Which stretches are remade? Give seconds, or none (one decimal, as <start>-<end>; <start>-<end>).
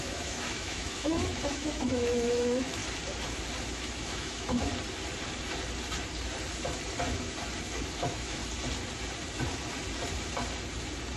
0.0-2.8; 3.7-4.7; 8.0-8.4